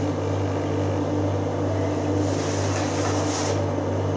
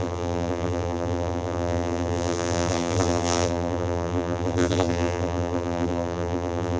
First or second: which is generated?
second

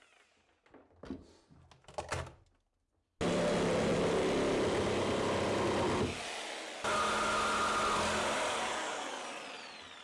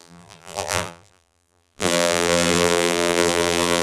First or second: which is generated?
second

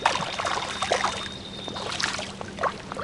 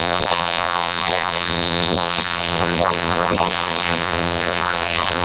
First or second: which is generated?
second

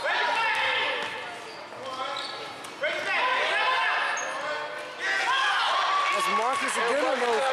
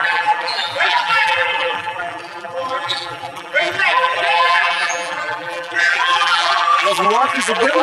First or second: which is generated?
second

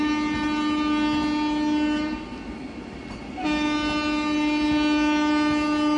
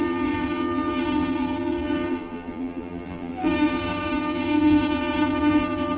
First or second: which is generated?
second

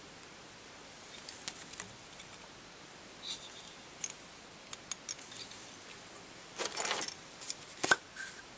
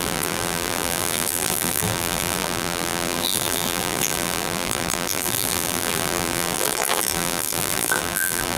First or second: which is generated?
second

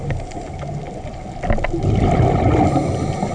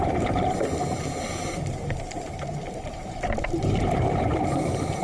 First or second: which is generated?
second